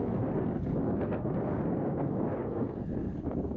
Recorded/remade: remade